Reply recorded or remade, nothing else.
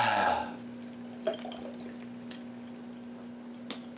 recorded